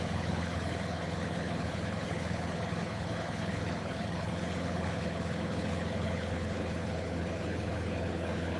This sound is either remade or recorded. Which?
remade